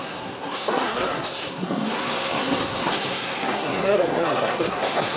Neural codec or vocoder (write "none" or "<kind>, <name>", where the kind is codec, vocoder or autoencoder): codec, SNAC